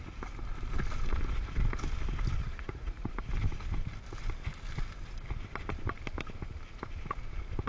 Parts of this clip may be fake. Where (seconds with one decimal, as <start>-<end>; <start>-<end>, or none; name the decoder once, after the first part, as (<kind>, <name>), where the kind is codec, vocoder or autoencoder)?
2.4-3.1 (vocoder, Vocos)